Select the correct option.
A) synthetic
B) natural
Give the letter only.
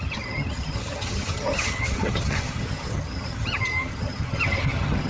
A